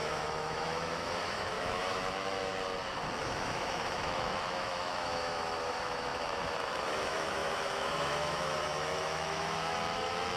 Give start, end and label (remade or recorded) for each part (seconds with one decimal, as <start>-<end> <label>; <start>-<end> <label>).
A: 0.0-2.5 remade; 2.5-3.2 recorded; 3.2-10.4 remade